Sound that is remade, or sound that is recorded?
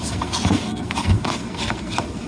remade